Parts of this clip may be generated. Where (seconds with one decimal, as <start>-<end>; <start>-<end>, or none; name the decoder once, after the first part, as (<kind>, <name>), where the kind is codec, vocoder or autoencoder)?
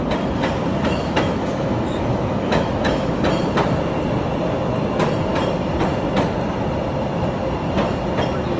0.7-3.2 (autoencoder, DAC-VAE)